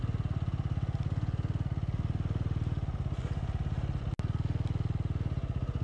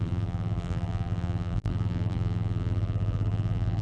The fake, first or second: second